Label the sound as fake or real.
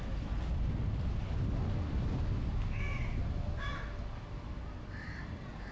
real